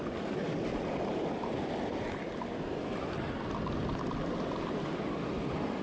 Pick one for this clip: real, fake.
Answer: real